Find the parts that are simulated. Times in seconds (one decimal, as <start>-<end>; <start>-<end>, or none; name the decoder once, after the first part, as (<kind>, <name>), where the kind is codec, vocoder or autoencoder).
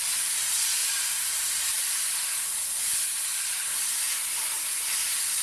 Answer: 0.0-0.8 (vocoder, BigVGAN v2); 1.6-5.4